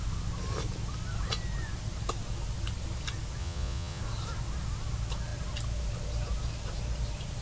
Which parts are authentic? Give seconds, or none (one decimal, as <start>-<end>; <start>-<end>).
0.0-3.4; 4.0-7.4